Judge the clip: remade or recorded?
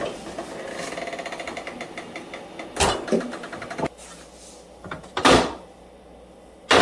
recorded